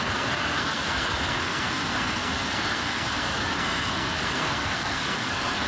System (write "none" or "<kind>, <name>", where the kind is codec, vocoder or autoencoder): codec, SNAC